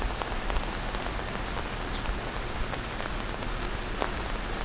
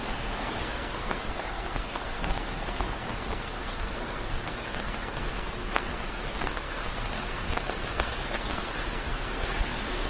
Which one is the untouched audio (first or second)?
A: first